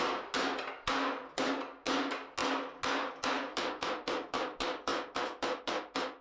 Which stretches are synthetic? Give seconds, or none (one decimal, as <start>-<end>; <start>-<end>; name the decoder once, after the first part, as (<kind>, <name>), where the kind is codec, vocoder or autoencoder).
none